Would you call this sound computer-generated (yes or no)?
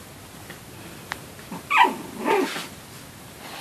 no